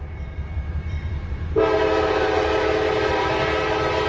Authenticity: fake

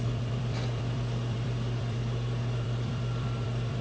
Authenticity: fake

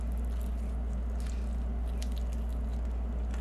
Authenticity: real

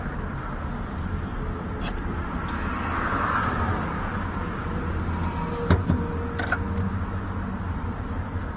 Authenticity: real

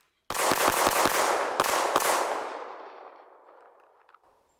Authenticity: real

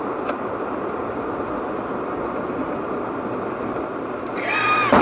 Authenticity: fake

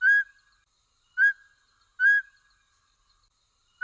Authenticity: real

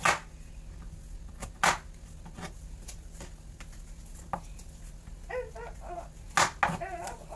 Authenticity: real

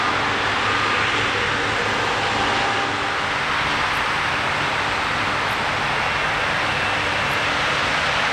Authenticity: real